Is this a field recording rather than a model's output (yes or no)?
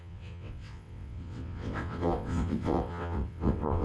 no